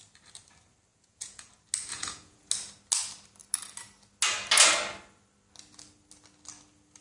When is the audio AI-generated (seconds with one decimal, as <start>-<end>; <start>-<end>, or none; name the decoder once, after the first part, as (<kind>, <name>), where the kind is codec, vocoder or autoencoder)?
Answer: 0.9-1.5 (vocoder, Vocos); 1.9-2.5